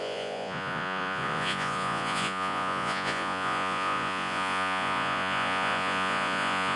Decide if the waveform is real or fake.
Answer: fake